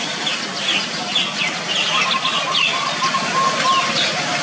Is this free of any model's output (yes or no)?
yes